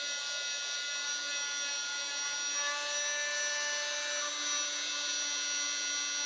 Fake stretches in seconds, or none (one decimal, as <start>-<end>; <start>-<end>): none

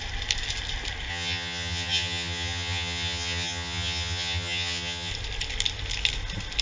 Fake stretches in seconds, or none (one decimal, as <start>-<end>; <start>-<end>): 1.1-5.1

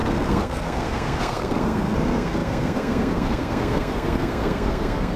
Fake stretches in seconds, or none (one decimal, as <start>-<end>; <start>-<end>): 0.0-5.2

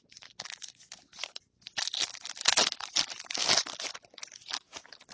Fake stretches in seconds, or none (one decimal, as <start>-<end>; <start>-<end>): none

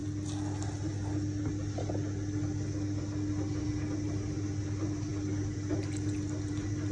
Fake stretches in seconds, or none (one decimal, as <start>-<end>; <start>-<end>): none